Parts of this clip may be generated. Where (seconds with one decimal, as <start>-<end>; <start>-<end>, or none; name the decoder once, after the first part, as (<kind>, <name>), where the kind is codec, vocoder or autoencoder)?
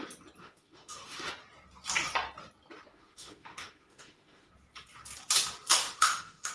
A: 0.4-1.3 (autoencoder, DAC-VAE); 2.9-4.5; 5.8-6.5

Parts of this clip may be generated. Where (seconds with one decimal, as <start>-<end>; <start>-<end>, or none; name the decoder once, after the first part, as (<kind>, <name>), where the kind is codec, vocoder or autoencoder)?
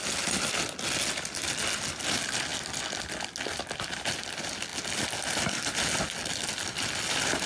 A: none